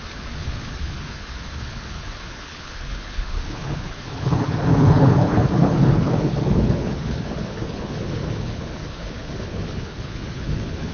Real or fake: fake